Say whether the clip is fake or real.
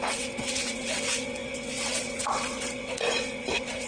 fake